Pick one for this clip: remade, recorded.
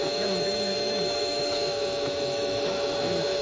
remade